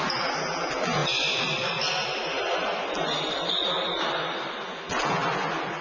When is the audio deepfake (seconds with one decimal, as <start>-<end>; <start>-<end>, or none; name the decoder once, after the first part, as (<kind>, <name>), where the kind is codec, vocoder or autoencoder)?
none

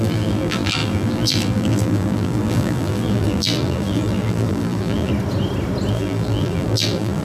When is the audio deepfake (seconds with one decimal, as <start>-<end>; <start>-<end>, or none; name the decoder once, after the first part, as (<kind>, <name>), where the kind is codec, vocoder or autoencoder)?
0.0-5.1 (vocoder, BigVGAN v2); 5.9-7.2